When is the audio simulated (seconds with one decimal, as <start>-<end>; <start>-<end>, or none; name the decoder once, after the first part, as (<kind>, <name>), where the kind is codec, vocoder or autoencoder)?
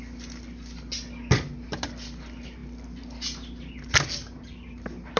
none